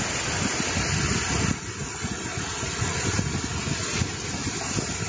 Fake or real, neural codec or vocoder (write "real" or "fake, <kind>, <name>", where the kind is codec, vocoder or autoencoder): real